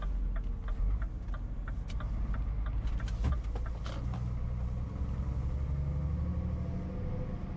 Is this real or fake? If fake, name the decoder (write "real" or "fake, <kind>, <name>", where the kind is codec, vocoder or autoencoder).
real